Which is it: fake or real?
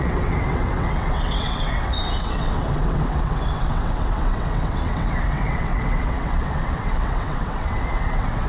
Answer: fake